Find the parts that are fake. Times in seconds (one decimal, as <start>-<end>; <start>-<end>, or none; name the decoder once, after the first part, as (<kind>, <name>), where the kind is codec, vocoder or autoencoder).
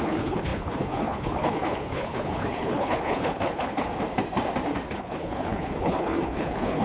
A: 0.0-3.9 (codec, HILCodec); 4.9-6.8